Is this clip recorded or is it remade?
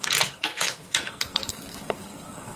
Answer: remade